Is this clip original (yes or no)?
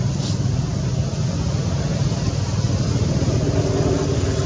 yes